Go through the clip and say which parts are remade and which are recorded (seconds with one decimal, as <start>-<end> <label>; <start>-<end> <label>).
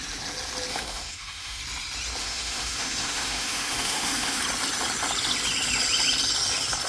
0.0-0.7 recorded; 0.7-1.6 remade; 1.6-2.2 recorded; 2.2-4.4 remade; 4.4-6.9 recorded